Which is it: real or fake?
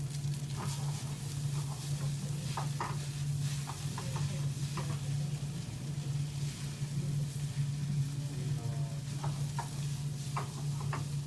real